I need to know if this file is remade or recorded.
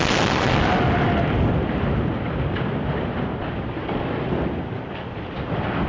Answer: recorded